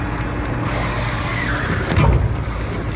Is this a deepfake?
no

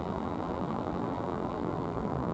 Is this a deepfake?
yes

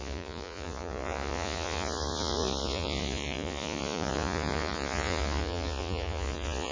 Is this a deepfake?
yes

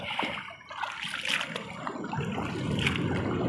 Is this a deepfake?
no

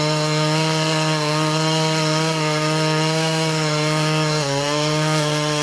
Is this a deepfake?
yes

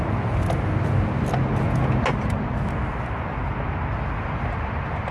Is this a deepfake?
no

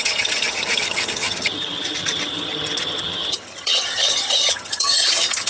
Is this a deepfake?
yes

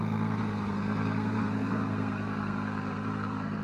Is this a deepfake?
yes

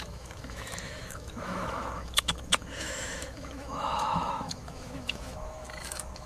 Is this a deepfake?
yes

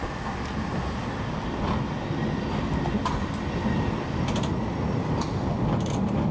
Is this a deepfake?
no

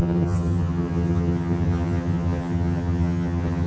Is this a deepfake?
yes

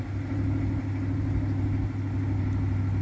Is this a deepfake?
no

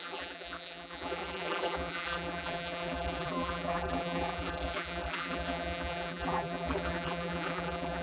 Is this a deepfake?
yes